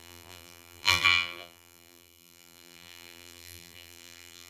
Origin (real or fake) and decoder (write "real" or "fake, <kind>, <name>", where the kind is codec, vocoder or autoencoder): fake, vocoder, BigVGAN v2